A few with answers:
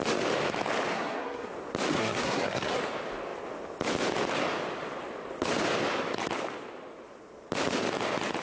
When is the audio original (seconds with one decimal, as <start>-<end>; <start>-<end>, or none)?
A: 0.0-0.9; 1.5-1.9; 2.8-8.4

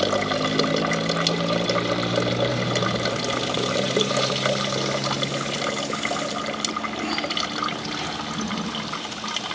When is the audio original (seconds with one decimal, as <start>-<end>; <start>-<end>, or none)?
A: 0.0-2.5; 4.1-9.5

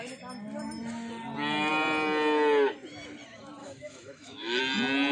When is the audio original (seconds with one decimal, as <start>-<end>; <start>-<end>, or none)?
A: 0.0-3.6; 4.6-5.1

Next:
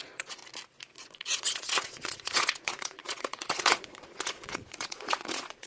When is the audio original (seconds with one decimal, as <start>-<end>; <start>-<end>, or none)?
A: 0.4-1.0

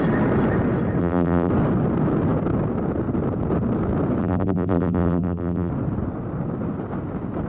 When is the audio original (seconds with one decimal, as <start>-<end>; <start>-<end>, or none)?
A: 0.0-1.0; 1.5-4.2; 5.7-7.5